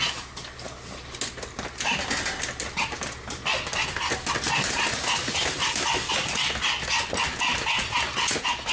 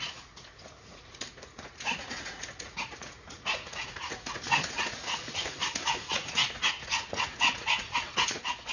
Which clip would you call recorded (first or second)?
first